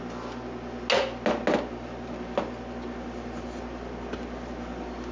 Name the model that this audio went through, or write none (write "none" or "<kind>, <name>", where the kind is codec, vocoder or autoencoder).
none